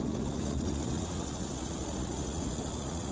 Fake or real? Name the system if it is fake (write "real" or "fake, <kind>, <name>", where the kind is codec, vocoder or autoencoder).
fake, vocoder, Vocos